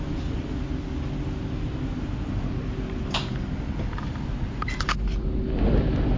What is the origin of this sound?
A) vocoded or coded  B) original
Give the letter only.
B